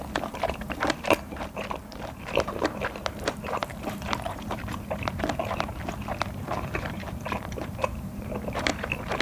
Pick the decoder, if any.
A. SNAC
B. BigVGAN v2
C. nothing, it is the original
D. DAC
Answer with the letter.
B